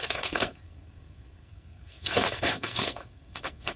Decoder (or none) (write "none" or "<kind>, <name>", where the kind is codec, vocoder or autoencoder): codec, SNAC